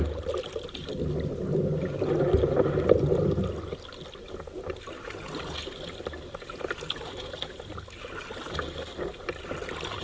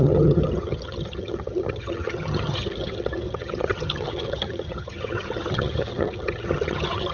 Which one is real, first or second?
first